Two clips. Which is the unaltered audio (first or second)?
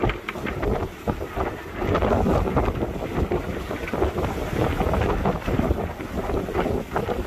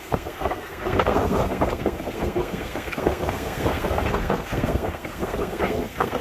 first